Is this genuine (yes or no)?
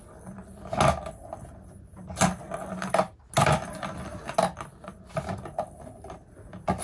yes